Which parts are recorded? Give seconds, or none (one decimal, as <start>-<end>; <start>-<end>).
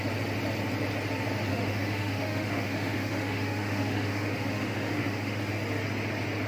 0.0-1.5; 5.4-6.5